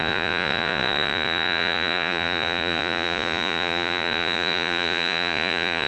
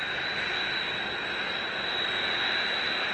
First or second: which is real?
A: second